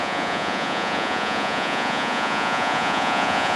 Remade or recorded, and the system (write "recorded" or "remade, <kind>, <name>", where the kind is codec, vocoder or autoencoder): remade, vocoder, Vocos